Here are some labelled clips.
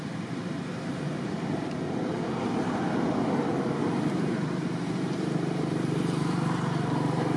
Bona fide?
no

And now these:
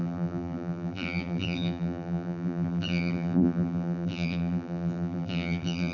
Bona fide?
no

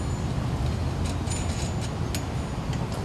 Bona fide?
yes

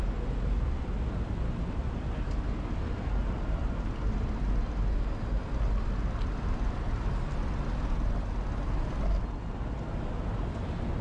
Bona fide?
yes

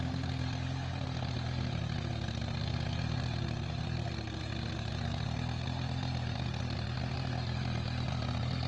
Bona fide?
yes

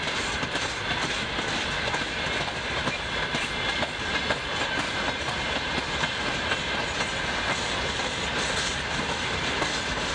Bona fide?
yes